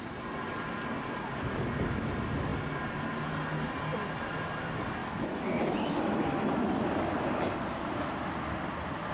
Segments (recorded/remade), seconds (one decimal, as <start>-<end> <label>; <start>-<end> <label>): 0.0-5.0 recorded; 5.0-6.0 remade; 6.0-9.1 recorded